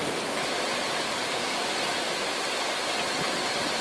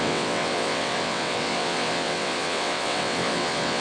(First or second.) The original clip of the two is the first